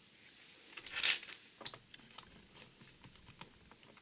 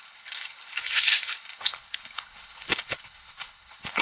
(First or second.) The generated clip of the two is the second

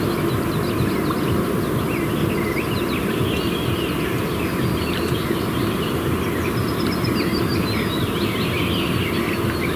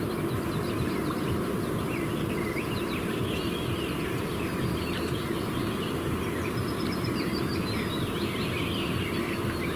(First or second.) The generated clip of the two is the second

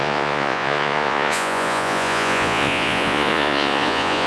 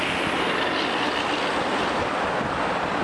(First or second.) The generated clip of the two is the first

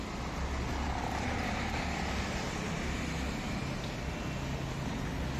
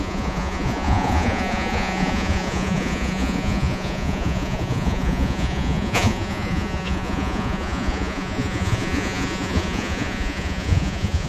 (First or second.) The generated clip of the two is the second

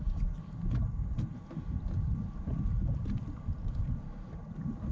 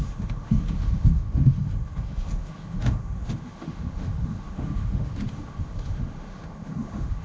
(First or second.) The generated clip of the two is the second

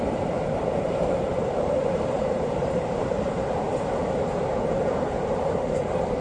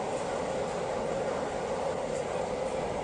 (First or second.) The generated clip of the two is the first